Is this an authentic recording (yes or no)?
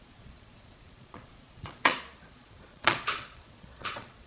no